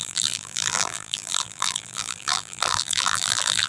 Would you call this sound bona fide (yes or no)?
no